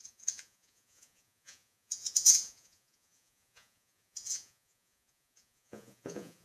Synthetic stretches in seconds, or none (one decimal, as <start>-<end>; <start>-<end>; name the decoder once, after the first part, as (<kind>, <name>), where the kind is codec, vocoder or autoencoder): 0.0-6.4 (vocoder, Vocos)